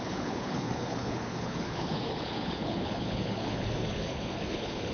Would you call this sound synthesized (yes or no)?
yes